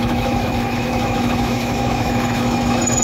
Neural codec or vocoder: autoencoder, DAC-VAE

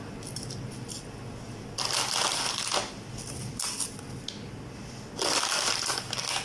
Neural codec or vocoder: none